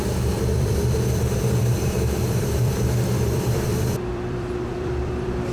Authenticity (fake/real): fake